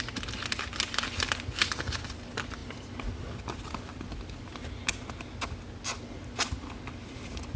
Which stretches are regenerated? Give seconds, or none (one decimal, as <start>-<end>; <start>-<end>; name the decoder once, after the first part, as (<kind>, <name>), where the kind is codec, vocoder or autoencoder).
none